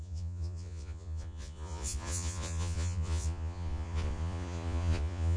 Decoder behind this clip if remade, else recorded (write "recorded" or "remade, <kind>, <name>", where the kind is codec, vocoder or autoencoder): remade, vocoder, Vocos